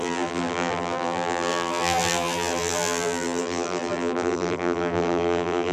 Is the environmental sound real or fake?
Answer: fake